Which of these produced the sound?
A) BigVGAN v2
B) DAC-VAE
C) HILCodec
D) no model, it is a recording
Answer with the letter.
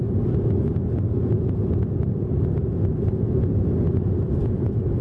D